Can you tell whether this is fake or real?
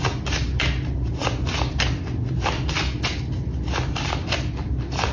real